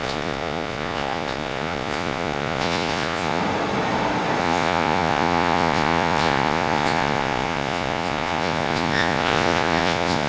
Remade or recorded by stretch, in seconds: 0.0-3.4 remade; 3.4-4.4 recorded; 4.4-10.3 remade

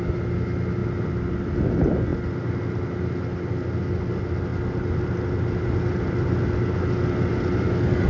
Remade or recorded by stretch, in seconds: 0.0-8.1 recorded

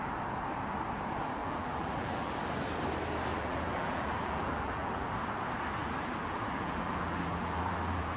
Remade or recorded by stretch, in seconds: 0.0-1.4 recorded; 1.4-2.3 remade; 2.3-3.3 recorded; 3.3-5.1 remade; 5.1-5.8 recorded; 5.8-8.2 remade

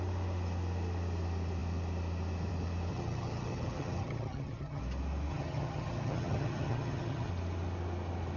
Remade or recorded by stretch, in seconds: 0.0-2.9 recorded; 2.9-4.8 remade; 4.8-5.3 recorded; 5.3-7.3 remade; 7.3-8.4 recorded

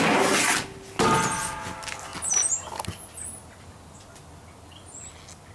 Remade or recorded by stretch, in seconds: 0.0-5.5 recorded

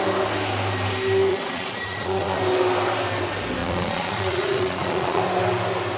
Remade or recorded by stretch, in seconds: 0.0-1.3 recorded; 1.3-2.4 remade; 2.4-3.6 recorded; 3.6-5.2 remade; 5.2-6.0 recorded

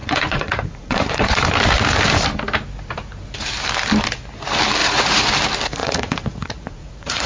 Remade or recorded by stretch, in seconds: 0.0-1.4 remade; 1.4-4.8 recorded; 4.8-5.3 remade; 5.3-5.8 recorded; 5.8-7.3 remade